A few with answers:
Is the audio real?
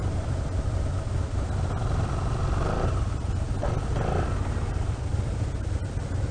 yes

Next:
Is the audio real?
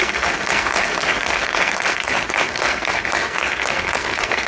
no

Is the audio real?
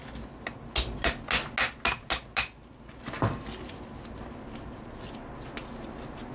yes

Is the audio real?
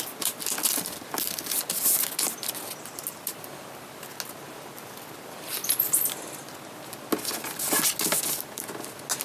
yes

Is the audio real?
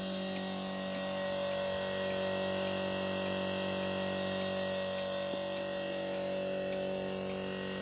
yes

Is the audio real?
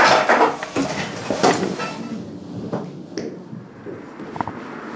yes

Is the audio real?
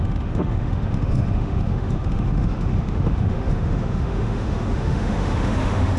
no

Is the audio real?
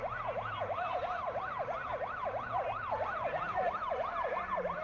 yes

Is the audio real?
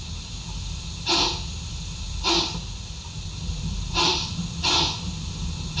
no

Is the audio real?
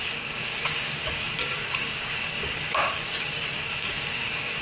no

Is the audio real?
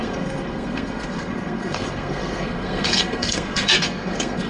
no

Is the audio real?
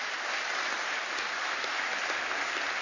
yes